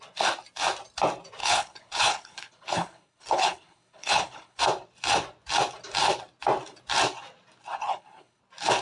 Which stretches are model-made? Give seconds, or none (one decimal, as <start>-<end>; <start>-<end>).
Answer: 1.4-4.6; 7.8-8.4